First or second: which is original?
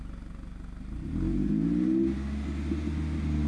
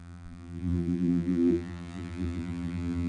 first